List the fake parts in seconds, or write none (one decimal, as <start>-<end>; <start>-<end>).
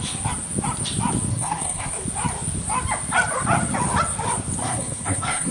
1.3-1.9; 4.6-5.5